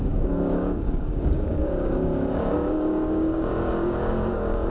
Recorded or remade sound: remade